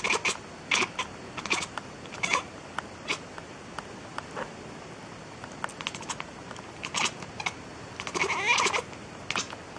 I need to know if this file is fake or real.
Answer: real